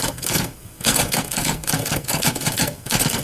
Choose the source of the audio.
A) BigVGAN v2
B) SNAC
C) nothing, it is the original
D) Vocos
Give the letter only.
B